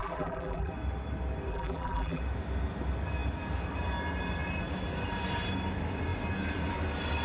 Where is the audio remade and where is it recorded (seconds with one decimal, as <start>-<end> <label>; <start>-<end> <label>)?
0.0-0.7 remade; 0.7-1.5 recorded; 1.5-2.2 remade; 2.2-7.2 recorded